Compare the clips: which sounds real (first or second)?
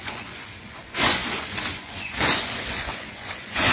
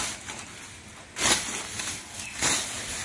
second